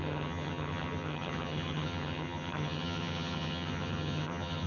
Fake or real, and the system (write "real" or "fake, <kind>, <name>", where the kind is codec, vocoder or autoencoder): fake, vocoder, HiFi-GAN